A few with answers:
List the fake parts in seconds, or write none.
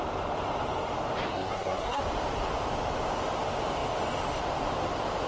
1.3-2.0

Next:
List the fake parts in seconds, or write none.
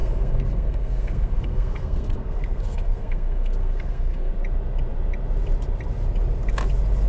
0.0-4.3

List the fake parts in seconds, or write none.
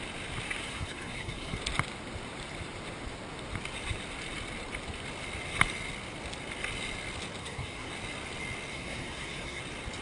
0.6-1.6; 7.4-7.9; 8.7-9.6